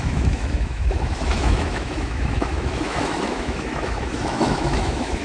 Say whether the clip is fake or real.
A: fake